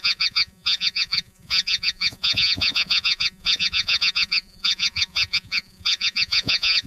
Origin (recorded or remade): remade